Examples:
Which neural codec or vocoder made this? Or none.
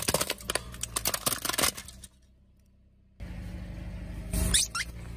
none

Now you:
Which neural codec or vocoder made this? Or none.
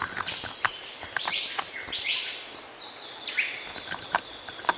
none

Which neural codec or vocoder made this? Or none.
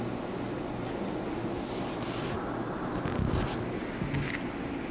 none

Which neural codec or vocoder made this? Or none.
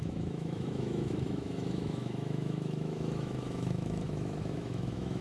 autoencoder, DAC-VAE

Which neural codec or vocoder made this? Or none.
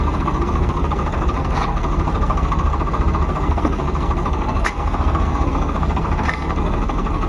codec, SNAC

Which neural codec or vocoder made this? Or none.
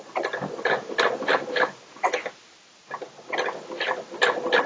none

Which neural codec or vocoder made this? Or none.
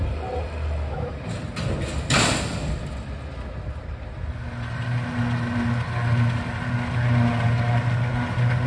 none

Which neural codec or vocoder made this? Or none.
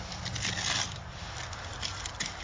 none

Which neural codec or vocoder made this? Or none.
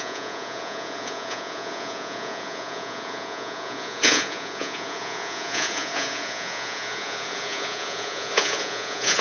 vocoder, Vocos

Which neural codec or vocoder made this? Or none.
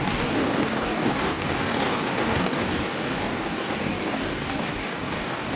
codec, DAC